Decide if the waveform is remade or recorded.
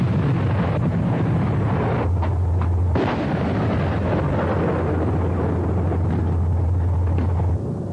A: recorded